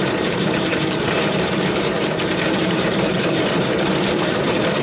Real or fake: fake